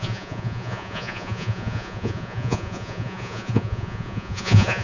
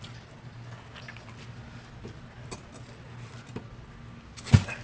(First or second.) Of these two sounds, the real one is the second